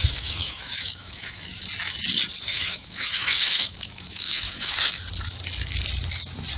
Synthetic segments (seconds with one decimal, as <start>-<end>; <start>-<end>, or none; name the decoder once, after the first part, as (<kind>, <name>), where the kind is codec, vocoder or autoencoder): 0.0-1.6 (autoencoder, DAC-VAE); 2.5-5.0